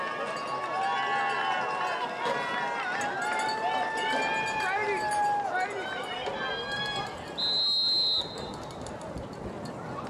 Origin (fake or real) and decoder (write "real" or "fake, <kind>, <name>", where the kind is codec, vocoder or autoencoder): real